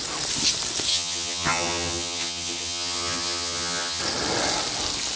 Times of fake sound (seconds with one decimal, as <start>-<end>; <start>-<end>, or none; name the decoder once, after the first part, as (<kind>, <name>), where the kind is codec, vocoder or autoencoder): 0.9-4.0 (vocoder, HiFi-GAN)